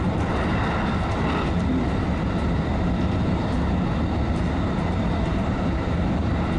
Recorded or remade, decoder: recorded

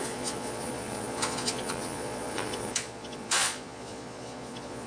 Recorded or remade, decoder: remade, vocoder, Vocos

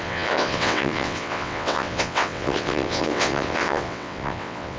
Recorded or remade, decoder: remade, vocoder, WaveNeXt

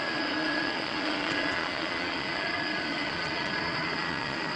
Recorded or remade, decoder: remade, vocoder, Vocos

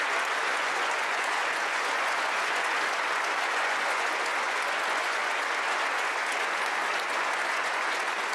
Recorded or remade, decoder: remade, vocoder, Vocos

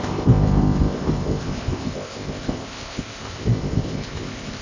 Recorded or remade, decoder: remade, codec, ZipCodec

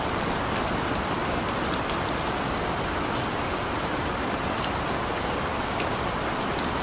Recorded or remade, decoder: recorded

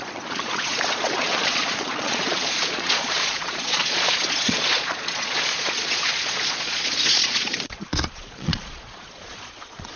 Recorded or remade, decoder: remade, vocoder, Vocos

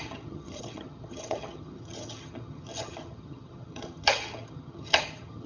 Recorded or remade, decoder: remade, vocoder, HiFi-GAN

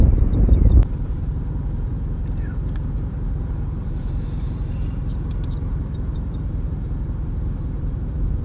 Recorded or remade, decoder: remade, vocoder, BigVGAN v2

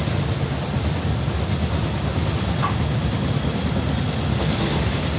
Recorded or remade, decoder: recorded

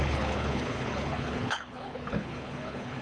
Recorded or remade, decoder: remade, codec, HILCodec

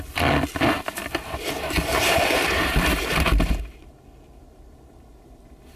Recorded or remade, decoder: recorded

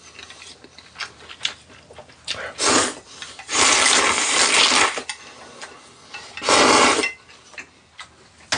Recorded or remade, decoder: recorded